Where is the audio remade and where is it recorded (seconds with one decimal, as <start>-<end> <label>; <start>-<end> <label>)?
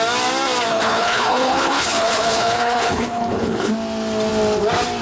0.0-0.7 recorded; 0.7-3.7 remade; 3.7-5.0 recorded